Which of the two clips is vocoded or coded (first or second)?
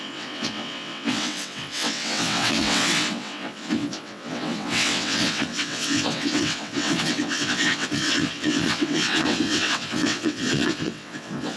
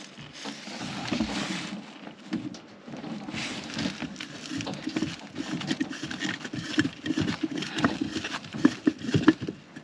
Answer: first